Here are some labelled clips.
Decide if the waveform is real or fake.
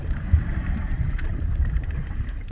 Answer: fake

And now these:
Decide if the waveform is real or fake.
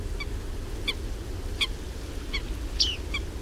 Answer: real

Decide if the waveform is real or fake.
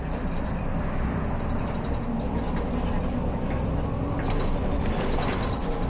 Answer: real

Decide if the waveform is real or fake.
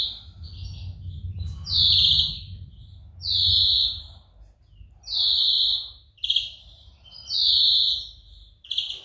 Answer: real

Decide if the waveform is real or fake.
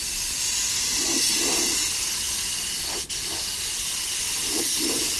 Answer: real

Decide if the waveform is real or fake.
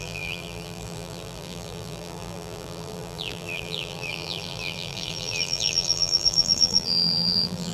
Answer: fake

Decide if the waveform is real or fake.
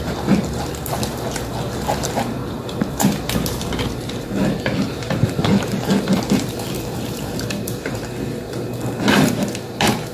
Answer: fake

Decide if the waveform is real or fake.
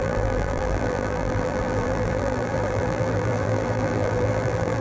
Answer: fake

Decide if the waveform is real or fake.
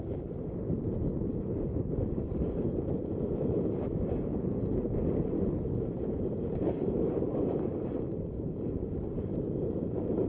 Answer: fake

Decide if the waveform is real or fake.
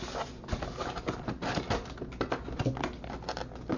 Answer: real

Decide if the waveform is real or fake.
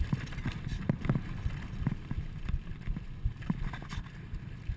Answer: fake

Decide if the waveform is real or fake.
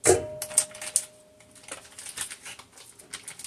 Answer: real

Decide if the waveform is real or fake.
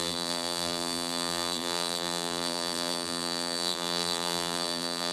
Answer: fake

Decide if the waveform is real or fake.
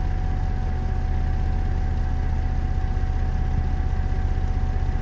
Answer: real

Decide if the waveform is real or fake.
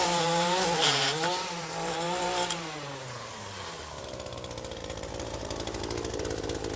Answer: fake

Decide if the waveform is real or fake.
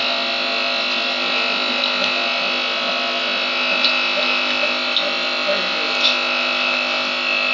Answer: real